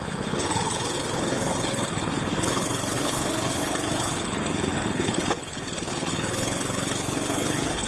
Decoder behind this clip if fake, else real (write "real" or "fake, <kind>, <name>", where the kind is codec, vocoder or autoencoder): fake, codec, HILCodec